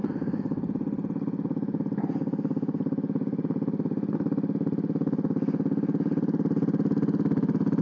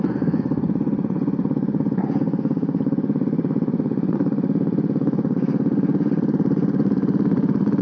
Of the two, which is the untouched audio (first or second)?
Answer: first